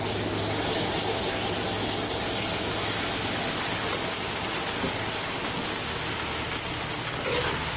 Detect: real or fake real